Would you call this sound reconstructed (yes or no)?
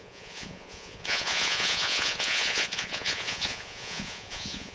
yes